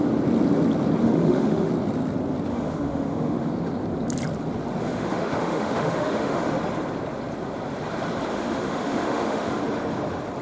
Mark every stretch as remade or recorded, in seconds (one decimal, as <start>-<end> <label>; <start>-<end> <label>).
0.0-1.0 recorded; 1.0-1.7 remade; 1.7-2.5 recorded; 2.5-3.5 remade; 3.5-4.8 recorded; 4.8-6.5 remade; 6.5-8.3 recorded; 8.3-9.6 remade; 9.6-10.4 recorded